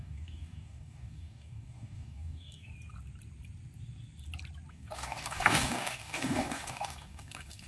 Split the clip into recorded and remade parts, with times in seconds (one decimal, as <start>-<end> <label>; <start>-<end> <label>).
0.0-2.7 remade; 2.7-4.7 recorded; 4.7-7.7 remade